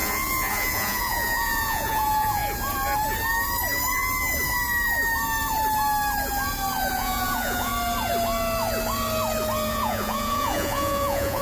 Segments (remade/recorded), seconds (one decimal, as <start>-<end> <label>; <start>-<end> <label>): 0.0-2.4 remade; 2.4-6.9 recorded; 6.9-7.7 remade; 7.7-9.7 recorded; 9.7-11.4 remade